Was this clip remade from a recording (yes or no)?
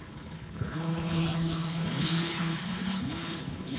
yes